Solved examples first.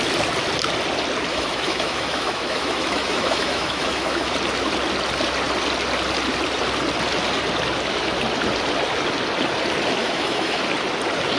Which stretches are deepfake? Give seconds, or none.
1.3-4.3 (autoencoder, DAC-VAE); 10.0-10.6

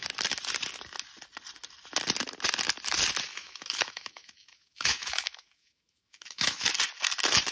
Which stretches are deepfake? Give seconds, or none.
3.3-6.7 (autoencoder, DAC-VAE)

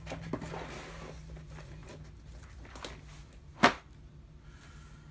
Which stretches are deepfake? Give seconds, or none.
none

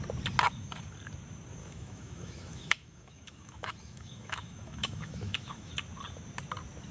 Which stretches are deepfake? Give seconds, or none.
1.6-5.7 (autoencoder, DAC-VAE)

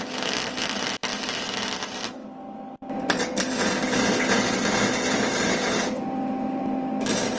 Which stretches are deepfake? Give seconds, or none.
none

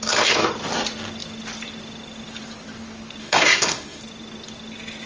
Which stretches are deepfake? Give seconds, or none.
3.2-4.0 (autoencoder, DAC-VAE)

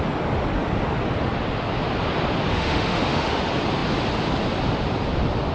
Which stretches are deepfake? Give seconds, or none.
2.5-3.4 (autoencoder, DAC-VAE)

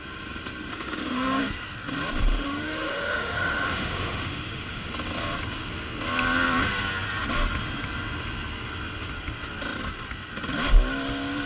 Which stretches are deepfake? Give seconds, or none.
0.7-1.4 (autoencoder, DAC-VAE); 2.3-4.9